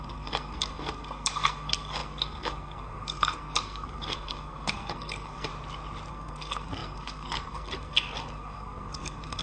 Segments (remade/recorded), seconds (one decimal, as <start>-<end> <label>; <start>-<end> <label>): 0.0-5.5 remade; 5.5-6.1 recorded; 6.1-9.4 remade